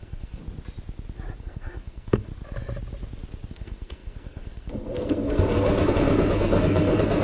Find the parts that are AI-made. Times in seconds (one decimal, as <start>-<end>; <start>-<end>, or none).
0.0-0.4; 1.4-2.3; 3.5-7.2